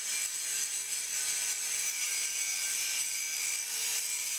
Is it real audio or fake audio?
real